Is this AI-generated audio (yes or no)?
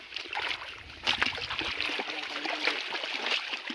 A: no